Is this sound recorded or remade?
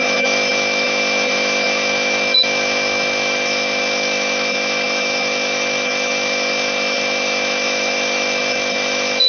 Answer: remade